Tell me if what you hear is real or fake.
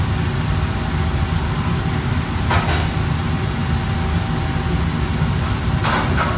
real